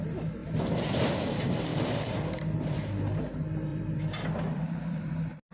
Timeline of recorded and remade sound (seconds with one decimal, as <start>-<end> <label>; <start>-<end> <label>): 0.0-0.4 recorded; 0.4-1.0 remade; 1.0-3.7 recorded; 3.7-4.9 remade; 4.9-5.5 recorded